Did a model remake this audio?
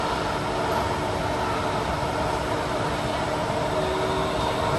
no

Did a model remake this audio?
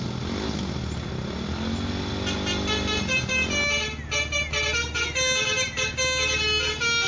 no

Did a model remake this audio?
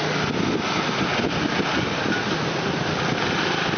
no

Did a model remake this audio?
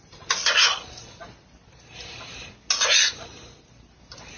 no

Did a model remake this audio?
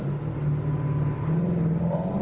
no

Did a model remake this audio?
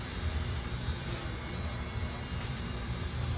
yes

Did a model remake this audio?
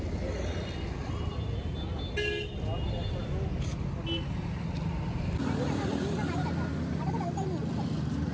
no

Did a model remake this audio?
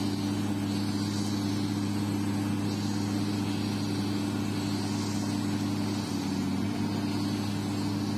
no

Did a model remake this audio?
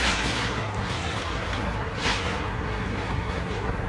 yes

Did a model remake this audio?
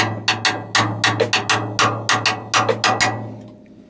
no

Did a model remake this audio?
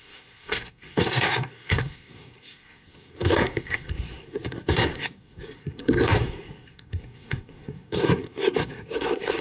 yes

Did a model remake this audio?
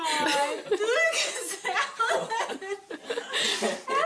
no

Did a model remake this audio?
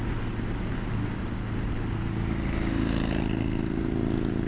no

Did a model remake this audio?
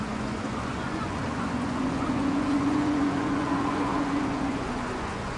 yes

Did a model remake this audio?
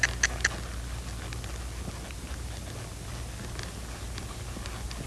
no